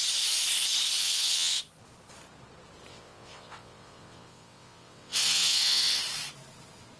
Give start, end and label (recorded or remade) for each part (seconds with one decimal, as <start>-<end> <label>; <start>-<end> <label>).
0.0-1.0 recorded; 1.0-1.6 remade; 1.6-2.9 recorded; 2.9-6.0 remade; 6.0-7.0 recorded